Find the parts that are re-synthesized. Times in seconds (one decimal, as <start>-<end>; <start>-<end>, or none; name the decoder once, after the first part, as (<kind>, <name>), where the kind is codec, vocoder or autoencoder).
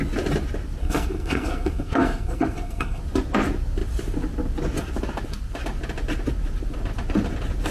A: 0.8-3.0 (codec, SNAC)